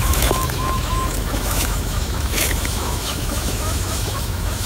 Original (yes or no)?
no